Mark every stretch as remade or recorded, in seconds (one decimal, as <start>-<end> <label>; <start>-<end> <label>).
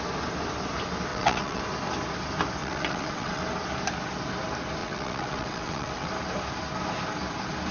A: 0.0-1.1 recorded; 1.1-1.6 remade; 1.6-2.6 recorded; 2.6-3.4 remade; 3.4-4.8 recorded; 4.8-6.1 remade; 6.1-7.7 recorded